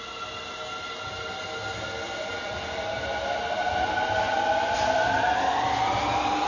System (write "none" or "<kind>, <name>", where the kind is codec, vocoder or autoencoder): none